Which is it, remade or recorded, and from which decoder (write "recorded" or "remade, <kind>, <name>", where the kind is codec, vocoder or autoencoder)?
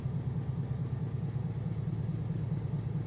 recorded